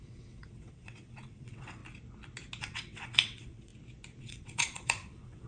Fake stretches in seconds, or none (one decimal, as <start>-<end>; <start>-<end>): 0.0-1.8; 2.6-3.7; 4.2-5.5